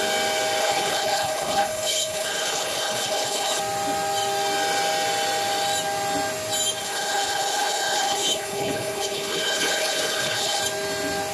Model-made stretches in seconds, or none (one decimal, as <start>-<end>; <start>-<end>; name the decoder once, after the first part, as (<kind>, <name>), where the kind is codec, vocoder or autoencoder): 0.6-3.6 (codec, HILCodec); 6.8-10.6